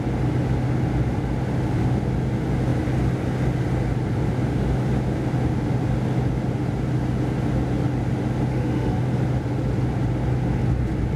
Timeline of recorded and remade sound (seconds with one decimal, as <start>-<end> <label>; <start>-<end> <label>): 0.0-8.5 recorded; 8.5-9.0 remade; 9.0-11.2 recorded